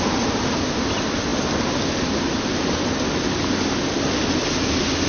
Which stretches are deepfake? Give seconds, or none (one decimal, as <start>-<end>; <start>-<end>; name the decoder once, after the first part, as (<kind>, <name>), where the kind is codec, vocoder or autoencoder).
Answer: none